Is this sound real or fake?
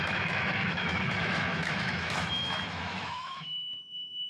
fake